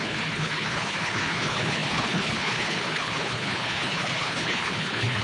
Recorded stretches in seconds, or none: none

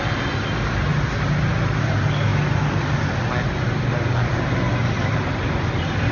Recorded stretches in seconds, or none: 0.0-6.1

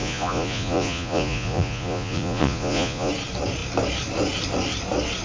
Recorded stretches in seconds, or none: 3.1-5.2

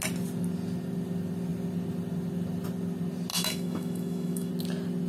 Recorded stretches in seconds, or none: 0.0-3.3; 4.5-5.1

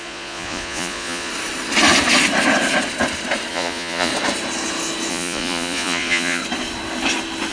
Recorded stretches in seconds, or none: 1.3-3.5; 4.1-5.1; 6.4-7.5

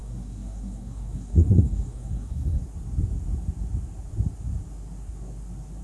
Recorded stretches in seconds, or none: 2.6-5.8

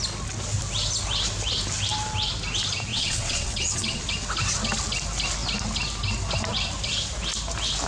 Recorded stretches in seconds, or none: 0.0-2.9; 4.0-7.9

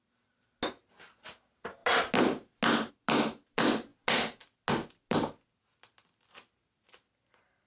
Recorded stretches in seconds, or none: 0.0-7.7